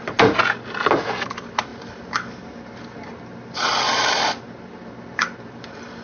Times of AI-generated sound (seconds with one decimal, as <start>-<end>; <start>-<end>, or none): none